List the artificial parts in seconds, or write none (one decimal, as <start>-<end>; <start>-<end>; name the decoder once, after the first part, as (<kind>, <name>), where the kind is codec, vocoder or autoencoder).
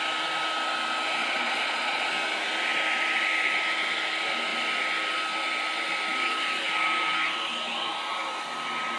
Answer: 1.2-2.1 (vocoder, Vocos)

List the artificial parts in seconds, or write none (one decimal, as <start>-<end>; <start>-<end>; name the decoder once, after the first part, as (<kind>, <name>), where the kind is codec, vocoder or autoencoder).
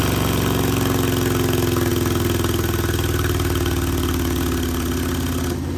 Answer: none